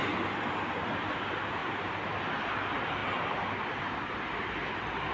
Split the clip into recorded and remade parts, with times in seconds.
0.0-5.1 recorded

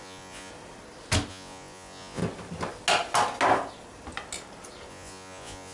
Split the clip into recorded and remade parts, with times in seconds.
0.0-0.5 remade; 0.5-1.3 recorded; 1.3-2.2 remade; 2.2-4.9 recorded; 4.9-5.7 remade

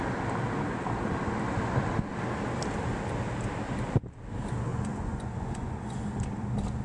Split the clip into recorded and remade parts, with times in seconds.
0.0-4.7 recorded; 4.7-6.0 remade; 6.0-6.8 recorded